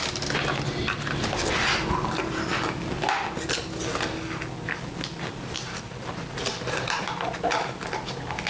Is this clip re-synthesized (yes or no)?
no